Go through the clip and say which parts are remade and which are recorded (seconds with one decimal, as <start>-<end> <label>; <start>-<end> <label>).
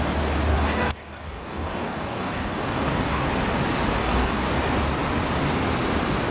0.0-0.5 recorded; 0.5-3.3 remade; 3.3-4.0 recorded; 4.0-4.5 remade; 4.5-6.3 recorded